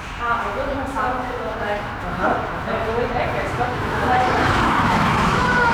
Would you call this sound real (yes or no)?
no